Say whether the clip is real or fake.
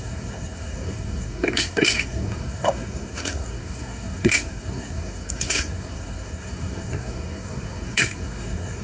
fake